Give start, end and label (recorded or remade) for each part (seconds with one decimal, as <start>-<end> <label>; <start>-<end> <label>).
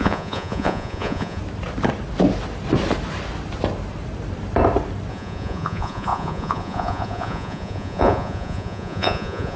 0.0-1.4 remade; 1.4-5.1 recorded; 5.1-9.6 remade